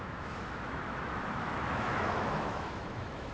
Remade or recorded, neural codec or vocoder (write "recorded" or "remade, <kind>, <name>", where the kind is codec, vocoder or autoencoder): remade, autoencoder, DAC-VAE